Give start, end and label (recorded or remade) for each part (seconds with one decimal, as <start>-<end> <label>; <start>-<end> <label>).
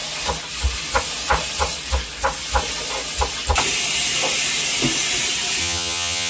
0.0-5.6 recorded; 5.6-6.3 remade